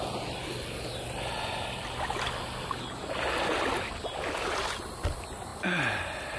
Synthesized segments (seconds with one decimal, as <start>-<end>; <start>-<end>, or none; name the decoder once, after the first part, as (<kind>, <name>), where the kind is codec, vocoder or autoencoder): none